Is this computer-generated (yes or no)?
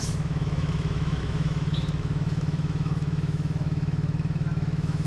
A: yes